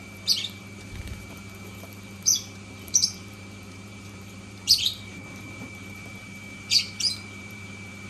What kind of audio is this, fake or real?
fake